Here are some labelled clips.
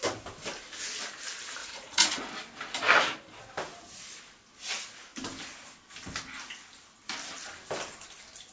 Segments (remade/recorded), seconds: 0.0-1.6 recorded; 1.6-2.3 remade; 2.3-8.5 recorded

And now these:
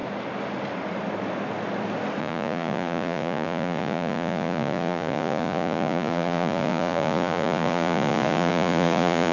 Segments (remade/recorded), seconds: 0.0-2.2 recorded; 2.2-9.3 remade

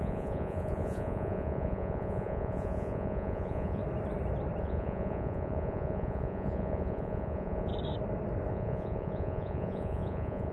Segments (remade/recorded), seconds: 0.0-3.8 remade; 3.8-4.6 recorded; 4.6-7.7 remade; 7.7-8.5 recorded; 8.5-10.5 remade

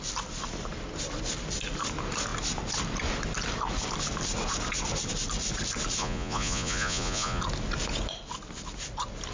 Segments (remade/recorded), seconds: 0.0-6.0 recorded; 6.0-7.4 remade; 7.4-9.3 recorded

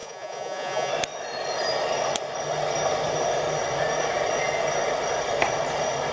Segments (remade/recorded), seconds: 0.0-0.9 remade; 0.9-6.1 recorded